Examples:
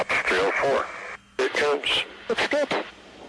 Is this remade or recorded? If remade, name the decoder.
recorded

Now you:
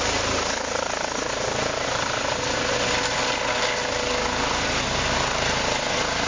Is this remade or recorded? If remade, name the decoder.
recorded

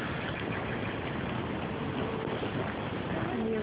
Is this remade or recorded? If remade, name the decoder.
recorded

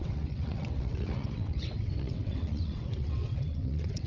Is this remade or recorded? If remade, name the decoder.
remade, vocoder, WaveNeXt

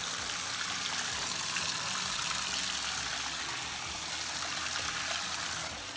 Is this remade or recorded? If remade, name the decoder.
recorded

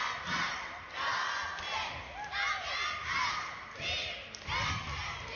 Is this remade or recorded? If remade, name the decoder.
recorded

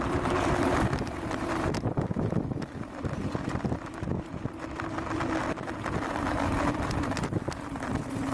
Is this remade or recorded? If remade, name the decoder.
recorded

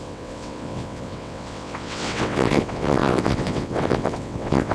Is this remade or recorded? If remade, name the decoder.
remade, vocoder, WaveNeXt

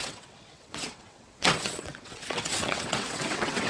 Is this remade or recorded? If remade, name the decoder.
remade, vocoder, WaveNeXt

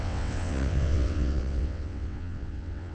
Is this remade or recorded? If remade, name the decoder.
remade, vocoder, WaveNeXt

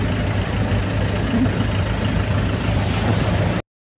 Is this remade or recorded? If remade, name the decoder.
recorded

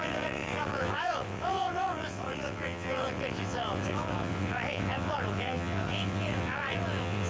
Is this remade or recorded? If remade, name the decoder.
remade, vocoder, WaveNeXt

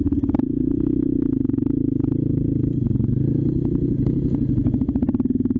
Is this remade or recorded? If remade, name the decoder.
recorded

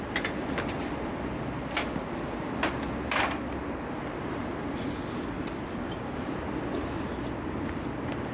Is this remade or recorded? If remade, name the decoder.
recorded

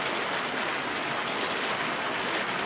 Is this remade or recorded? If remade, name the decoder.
recorded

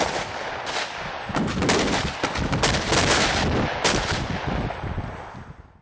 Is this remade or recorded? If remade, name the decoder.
recorded